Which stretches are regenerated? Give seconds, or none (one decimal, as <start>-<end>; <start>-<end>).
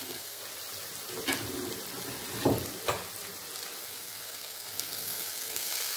0.0-0.4; 3.8-6.0